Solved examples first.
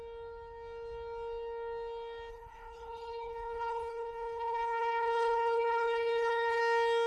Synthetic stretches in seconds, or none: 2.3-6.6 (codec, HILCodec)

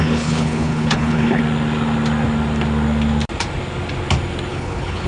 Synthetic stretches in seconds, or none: 0.0-1.4 (codec, HILCodec); 4.5-5.1